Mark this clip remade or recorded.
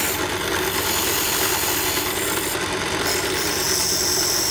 recorded